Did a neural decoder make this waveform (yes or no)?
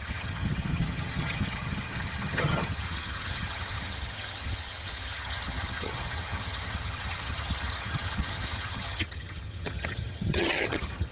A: yes